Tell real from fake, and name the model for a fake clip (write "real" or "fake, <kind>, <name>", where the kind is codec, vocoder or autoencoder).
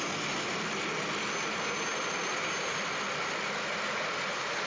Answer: real